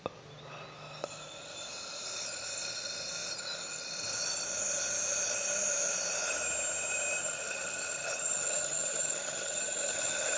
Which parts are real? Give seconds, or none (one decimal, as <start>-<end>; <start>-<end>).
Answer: 0.0-7.2